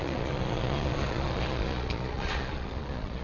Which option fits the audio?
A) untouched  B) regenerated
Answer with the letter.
B